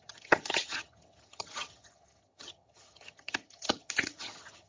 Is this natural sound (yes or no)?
no